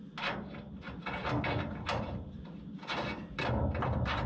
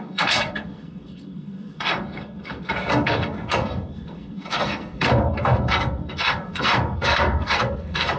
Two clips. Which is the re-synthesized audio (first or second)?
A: second